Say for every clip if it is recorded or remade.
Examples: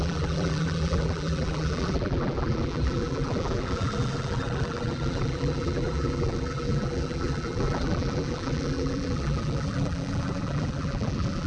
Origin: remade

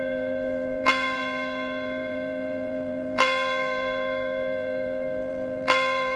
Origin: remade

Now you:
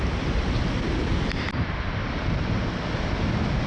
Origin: recorded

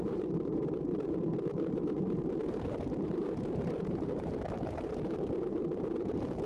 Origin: remade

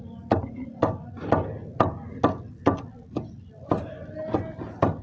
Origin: recorded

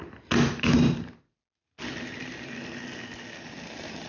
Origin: recorded